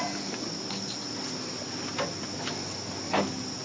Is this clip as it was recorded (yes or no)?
yes